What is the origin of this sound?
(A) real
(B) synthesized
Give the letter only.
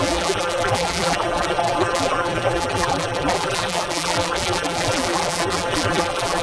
B